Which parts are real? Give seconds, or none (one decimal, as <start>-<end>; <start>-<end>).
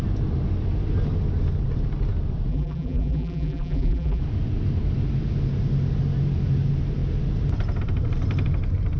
0.0-2.5; 4.2-9.0